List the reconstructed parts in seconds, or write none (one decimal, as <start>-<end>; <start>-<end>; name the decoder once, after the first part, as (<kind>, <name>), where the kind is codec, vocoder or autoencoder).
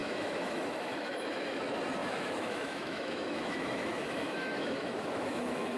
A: 0.0-1.6 (autoencoder, DAC-VAE); 2.0-5.8